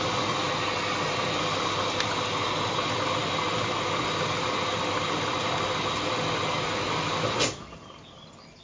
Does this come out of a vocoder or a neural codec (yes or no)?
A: no